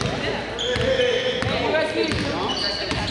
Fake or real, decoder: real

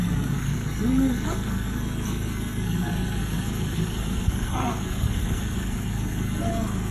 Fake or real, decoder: fake, codec, SNAC